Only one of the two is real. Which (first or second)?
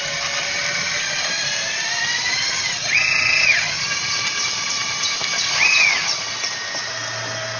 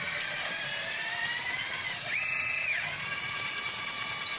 second